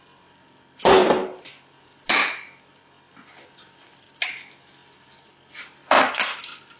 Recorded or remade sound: recorded